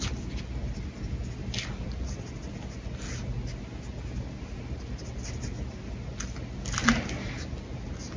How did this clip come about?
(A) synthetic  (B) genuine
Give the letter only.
B